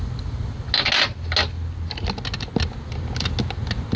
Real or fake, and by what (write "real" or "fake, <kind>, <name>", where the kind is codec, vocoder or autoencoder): real